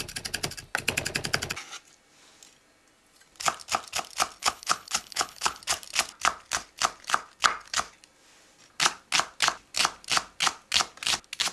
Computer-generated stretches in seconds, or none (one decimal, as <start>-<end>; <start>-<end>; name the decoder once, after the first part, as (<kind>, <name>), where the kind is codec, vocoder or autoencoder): 4.4-5.6 (codec, HILCodec)

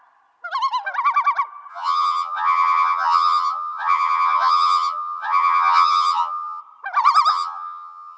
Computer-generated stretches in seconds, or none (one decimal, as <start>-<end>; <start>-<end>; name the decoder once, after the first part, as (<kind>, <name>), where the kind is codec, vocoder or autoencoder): 1.7-6.6 (vocoder, HiFi-GAN); 7.3-8.2

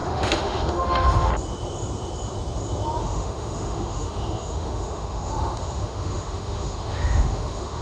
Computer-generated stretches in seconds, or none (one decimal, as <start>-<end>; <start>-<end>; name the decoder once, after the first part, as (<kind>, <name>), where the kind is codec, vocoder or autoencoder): 0.0-1.3 (autoencoder, DAC-VAE); 3.0-7.8

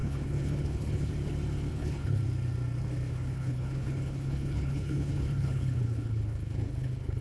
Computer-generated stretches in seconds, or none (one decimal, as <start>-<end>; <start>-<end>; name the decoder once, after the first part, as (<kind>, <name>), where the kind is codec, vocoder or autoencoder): 0.0-1.1 (codec, HILCodec); 1.7-2.2; 3.1-7.2

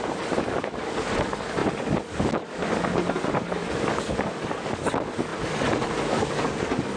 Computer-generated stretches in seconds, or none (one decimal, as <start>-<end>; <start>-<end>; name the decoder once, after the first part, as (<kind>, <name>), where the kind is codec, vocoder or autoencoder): 0.0-7.0 (codec, DAC)